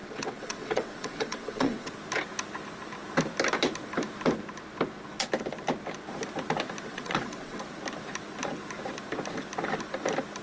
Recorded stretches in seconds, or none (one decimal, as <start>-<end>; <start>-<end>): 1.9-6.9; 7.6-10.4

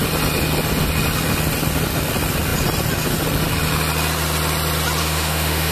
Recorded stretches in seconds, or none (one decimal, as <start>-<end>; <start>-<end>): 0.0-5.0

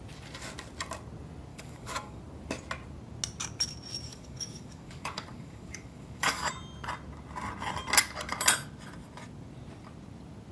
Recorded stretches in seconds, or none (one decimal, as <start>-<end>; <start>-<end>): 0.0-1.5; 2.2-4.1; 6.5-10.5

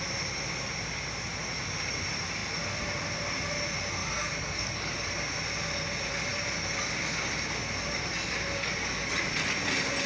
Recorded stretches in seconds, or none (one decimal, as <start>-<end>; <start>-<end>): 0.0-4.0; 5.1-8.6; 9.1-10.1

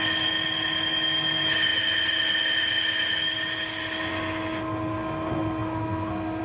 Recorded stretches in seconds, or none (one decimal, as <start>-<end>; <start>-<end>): 0.0-6.4

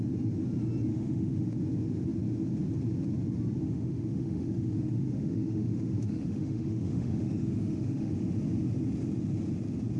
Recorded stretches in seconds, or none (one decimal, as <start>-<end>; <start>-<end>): 0.0-0.9; 1.6-3.6; 8.1-10.0